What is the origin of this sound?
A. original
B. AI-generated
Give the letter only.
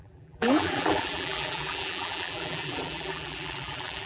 B